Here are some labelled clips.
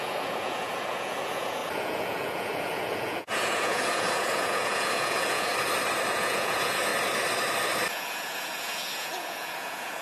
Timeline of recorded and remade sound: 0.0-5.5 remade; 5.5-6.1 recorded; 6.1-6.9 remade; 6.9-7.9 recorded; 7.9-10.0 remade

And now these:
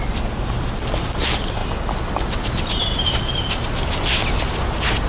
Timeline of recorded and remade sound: 0.0-5.1 recorded